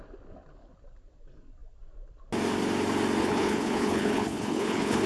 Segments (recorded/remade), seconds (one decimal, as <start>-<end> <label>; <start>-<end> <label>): 0.0-3.2 recorded; 3.2-5.1 remade